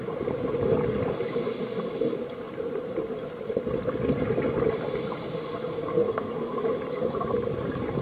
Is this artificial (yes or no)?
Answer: no